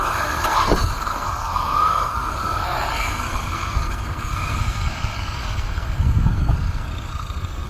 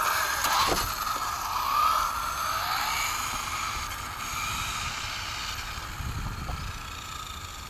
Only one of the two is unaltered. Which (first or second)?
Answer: second